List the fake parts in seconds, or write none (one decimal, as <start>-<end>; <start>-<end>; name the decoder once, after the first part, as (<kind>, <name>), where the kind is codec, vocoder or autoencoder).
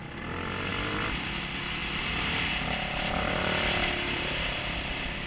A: none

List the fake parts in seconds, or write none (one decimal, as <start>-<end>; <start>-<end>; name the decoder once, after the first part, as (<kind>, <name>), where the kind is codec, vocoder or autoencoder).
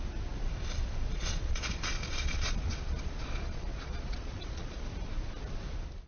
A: 1.1-4.8 (vocoder, Vocos)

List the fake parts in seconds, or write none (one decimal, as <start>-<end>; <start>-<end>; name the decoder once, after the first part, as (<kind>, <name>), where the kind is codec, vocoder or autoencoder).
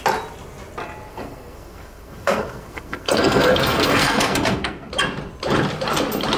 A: 1.1-4.9 (codec, SNAC)